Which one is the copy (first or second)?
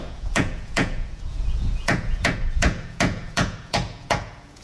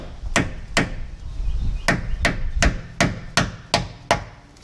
first